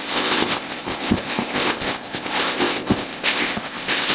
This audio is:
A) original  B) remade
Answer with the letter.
B